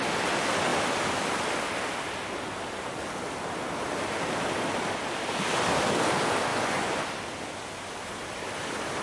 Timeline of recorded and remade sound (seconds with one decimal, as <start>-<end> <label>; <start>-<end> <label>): 0.0-6.5 recorded; 6.5-7.0 remade; 7.0-9.0 recorded